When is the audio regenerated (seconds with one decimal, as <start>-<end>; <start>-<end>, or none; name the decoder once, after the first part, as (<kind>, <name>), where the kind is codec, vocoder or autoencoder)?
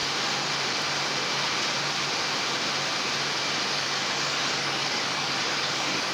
3.7-6.1 (codec, DAC)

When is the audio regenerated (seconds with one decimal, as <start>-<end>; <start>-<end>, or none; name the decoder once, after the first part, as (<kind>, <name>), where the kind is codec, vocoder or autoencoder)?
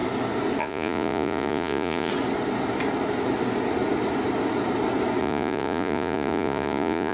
0.6-2.1 (vocoder, Vocos); 5.2-7.1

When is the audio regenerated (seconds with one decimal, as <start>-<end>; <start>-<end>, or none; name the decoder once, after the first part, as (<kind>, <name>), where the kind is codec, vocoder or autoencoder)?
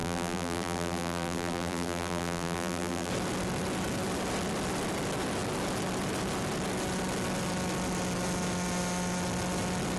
0.0-3.1 (vocoder, BigVGAN v2)